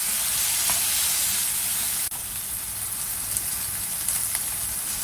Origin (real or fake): real